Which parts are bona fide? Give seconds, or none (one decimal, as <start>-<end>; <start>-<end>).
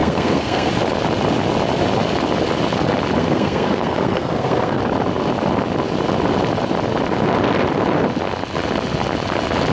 0.7-3.2; 4.8-9.7